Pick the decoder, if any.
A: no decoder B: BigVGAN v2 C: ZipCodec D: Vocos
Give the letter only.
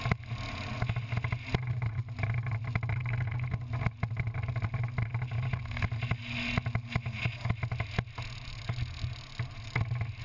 A